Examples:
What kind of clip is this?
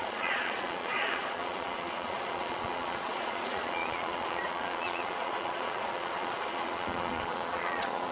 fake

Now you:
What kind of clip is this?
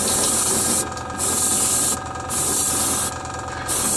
real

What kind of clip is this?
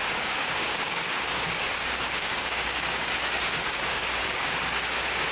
fake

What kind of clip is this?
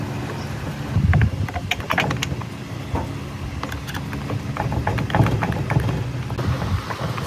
real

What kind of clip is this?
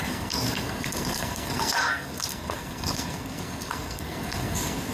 fake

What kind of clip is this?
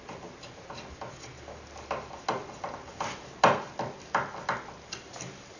real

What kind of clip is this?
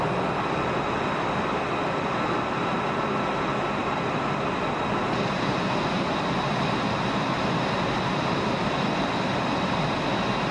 real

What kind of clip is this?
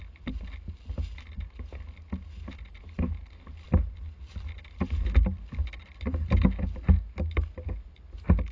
real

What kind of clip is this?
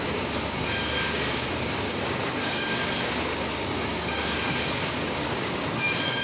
fake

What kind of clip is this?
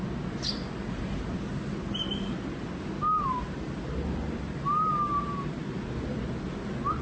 real